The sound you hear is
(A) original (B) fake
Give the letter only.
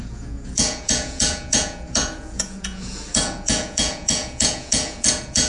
B